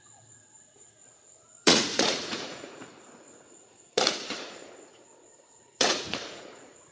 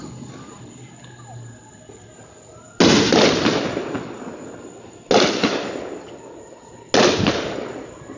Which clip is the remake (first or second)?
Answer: first